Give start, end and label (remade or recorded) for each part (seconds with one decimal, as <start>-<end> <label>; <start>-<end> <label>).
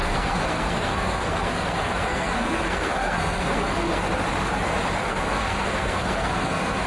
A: 0.0-4.1 remade; 4.1-5.0 recorded; 5.0-6.9 remade